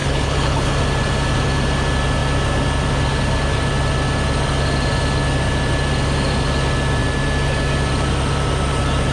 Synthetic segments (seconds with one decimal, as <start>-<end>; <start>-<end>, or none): 0.0-0.7